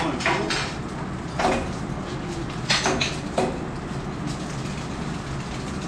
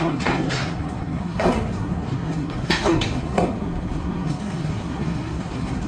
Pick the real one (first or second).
first